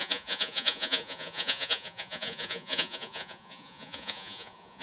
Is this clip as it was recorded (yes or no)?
no